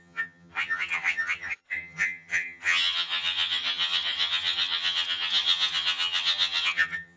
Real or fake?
fake